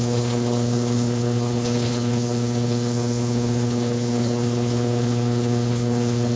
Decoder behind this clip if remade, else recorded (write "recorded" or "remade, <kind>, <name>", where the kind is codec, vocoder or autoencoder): remade, codec, HILCodec